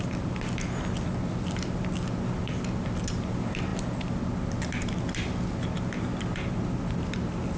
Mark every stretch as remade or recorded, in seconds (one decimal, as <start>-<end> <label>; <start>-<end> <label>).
0.0-7.6 recorded